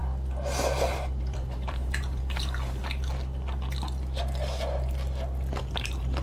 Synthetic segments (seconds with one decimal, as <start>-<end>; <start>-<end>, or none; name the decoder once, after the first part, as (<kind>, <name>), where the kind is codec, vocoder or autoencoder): 1.2-2.8 (vocoder, BigVGAN v2); 5.6-6.2